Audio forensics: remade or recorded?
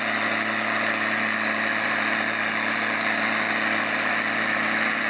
recorded